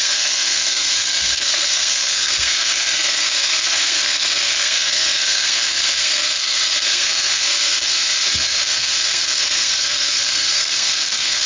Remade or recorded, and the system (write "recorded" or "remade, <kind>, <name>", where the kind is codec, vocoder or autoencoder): remade, codec, SNAC